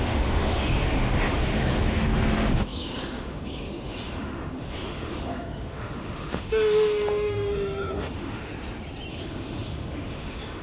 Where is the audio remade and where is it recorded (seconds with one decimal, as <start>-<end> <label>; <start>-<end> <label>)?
0.0-8.5 remade; 8.5-9.1 recorded; 9.1-10.6 remade